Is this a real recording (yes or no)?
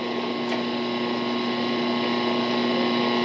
yes